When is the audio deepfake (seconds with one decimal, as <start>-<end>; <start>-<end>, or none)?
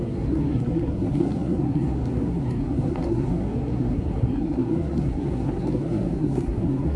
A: 0.0-7.0